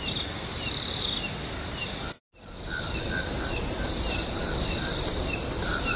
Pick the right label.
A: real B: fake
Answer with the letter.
A